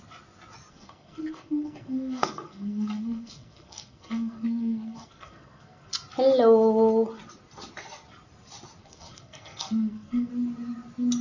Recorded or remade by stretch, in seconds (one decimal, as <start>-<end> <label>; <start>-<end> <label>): 0.0-0.7 recorded; 0.7-5.9 remade; 5.9-8.8 recorded; 8.8-10.3 remade; 10.3-11.2 recorded